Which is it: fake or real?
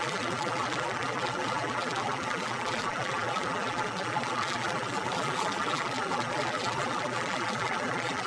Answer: fake